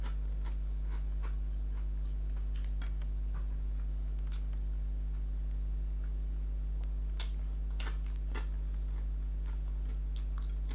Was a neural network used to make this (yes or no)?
no